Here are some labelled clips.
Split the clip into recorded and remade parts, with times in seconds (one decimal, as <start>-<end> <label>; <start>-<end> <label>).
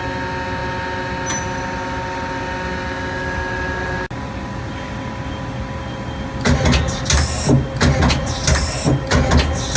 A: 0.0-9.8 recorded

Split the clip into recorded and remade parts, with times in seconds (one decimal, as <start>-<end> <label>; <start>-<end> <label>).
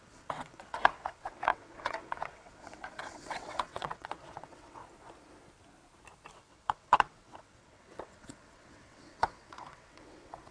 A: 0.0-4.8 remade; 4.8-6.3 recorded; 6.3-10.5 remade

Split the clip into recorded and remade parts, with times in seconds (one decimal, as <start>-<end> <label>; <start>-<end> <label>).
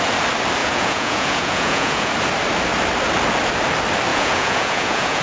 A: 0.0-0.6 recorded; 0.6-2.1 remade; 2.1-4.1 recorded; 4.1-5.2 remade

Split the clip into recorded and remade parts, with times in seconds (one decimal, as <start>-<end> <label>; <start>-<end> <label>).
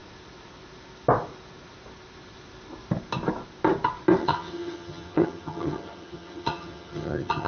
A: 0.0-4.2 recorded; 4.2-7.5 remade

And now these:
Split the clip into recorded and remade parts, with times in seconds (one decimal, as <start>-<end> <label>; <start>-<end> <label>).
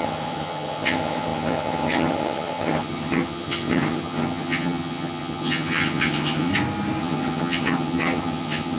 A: 0.0-6.5 remade; 6.5-7.0 recorded; 7.0-8.8 remade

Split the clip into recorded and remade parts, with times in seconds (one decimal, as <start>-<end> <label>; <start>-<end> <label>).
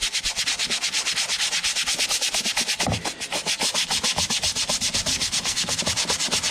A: 0.0-5.1 recorded; 5.1-5.8 remade; 5.8-6.5 recorded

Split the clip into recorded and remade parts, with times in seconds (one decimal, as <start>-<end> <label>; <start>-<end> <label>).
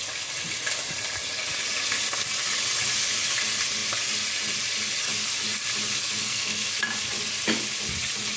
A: 0.0-6.0 recorded; 6.0-6.7 remade; 6.7-8.4 recorded